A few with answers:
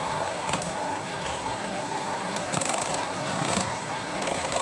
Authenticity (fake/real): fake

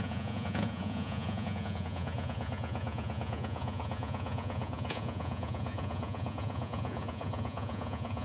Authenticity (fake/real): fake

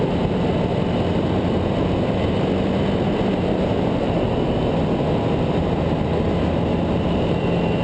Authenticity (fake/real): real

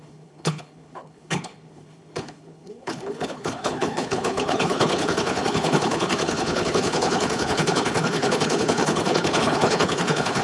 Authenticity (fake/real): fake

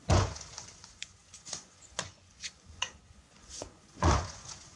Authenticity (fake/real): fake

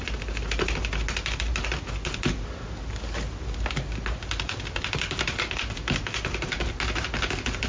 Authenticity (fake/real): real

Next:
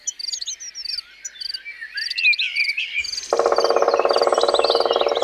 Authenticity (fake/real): real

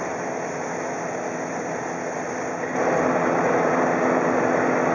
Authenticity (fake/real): real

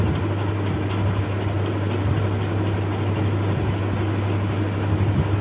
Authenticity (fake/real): real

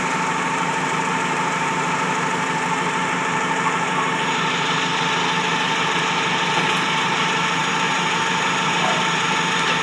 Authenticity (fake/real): fake